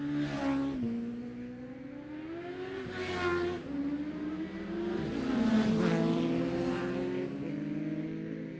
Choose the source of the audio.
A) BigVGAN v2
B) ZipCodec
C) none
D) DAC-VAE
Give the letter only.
C